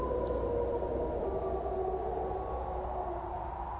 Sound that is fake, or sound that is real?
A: real